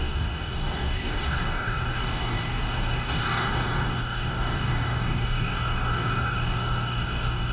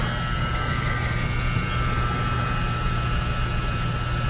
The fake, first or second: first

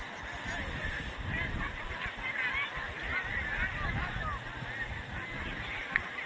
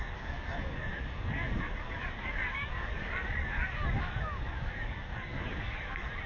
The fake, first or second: second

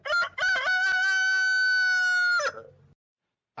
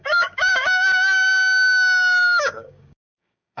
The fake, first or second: second